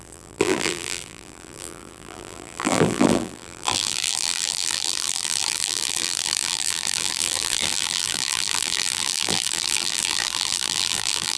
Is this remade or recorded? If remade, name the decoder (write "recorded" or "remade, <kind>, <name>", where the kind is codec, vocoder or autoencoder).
remade, vocoder, BigVGAN v2